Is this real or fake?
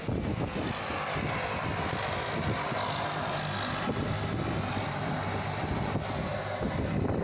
real